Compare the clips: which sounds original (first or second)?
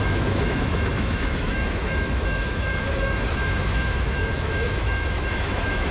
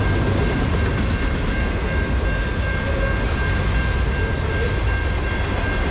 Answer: second